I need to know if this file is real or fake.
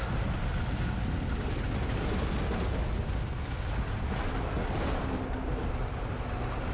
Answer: real